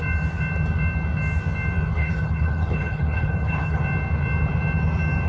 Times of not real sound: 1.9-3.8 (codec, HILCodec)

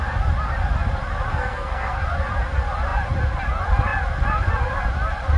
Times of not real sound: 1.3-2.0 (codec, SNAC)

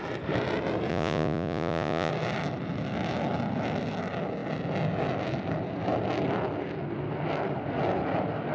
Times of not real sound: 0.9-2.1 (vocoder, Vocos)